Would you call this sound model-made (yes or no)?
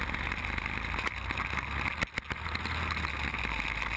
no